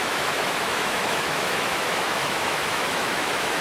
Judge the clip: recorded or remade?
remade